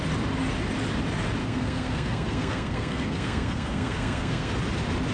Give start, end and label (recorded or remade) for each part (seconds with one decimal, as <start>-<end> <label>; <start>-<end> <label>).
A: 0.0-1.4 recorded; 1.4-4.5 remade; 4.5-5.1 recorded